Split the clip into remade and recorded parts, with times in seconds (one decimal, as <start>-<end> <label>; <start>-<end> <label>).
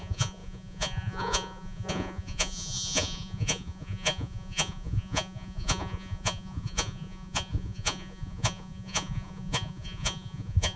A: 0.0-10.8 remade